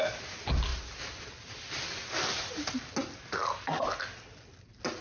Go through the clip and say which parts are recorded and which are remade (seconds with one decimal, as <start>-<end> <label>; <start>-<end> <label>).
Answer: 0.0-5.0 recorded